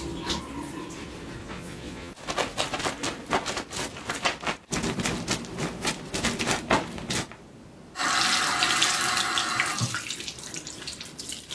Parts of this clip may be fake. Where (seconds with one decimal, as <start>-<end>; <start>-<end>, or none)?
1.4-2.1